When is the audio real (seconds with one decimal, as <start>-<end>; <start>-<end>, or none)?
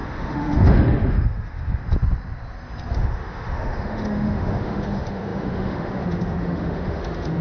1.8-2.9